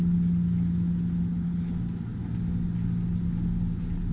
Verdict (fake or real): real